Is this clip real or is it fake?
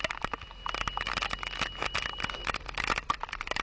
real